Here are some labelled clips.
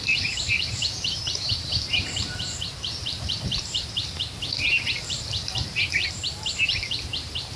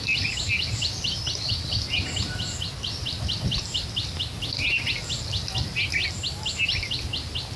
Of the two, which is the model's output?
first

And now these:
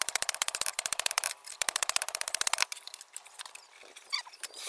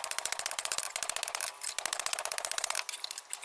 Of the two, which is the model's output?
first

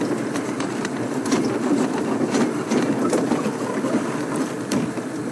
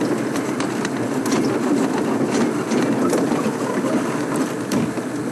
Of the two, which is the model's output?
first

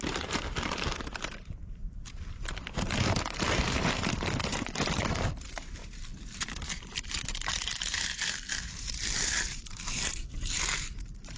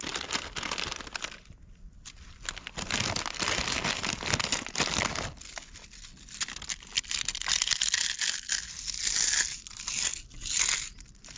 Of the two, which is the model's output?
first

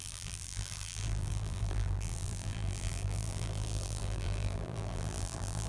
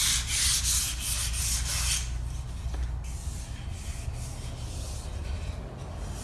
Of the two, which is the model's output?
first